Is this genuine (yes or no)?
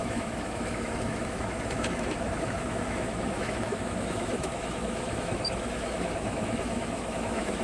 no